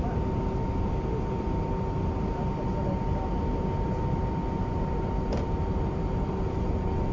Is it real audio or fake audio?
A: real